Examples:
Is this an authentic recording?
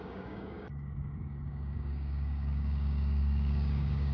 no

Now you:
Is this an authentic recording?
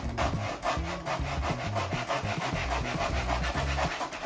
yes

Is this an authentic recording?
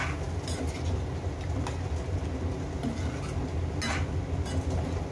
yes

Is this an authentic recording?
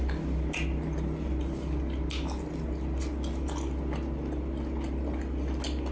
yes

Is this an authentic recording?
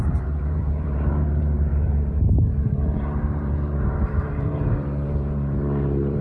no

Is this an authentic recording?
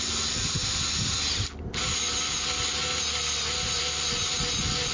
yes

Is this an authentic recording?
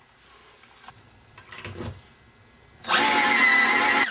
yes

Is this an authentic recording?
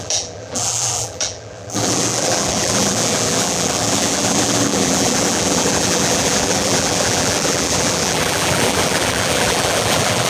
no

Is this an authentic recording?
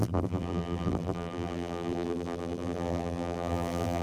no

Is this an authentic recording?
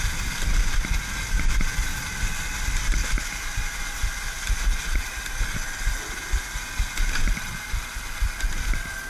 yes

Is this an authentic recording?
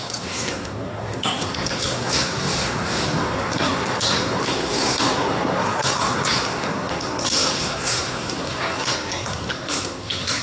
no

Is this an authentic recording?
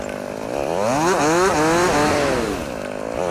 yes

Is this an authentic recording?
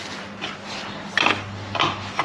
yes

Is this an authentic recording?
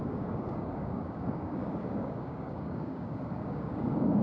no